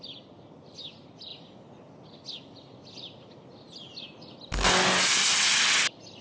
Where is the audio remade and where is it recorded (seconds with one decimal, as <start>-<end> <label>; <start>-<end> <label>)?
0.0-6.2 recorded